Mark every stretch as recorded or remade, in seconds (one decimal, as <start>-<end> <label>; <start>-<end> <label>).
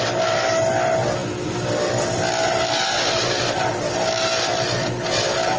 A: 0.0-5.6 recorded